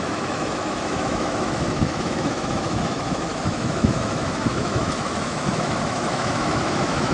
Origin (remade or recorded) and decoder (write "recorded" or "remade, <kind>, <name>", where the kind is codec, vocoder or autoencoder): remade, autoencoder, DAC-VAE